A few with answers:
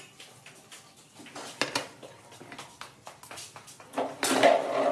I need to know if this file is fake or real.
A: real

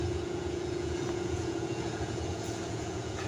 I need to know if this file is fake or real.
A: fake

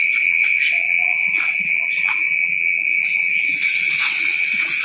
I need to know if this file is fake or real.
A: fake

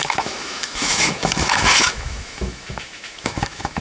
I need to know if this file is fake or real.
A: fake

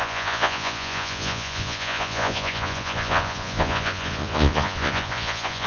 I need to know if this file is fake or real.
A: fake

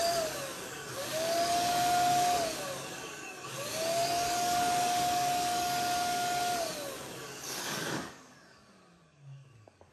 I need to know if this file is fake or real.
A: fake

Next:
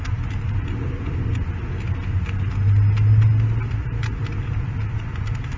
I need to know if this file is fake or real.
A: real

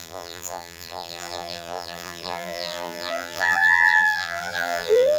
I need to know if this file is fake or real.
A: fake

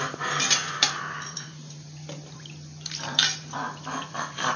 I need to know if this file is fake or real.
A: fake